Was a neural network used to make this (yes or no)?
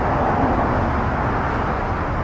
no